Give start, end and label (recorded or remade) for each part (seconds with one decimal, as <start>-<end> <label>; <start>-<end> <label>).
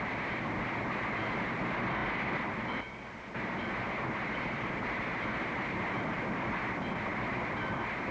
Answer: 0.0-8.1 remade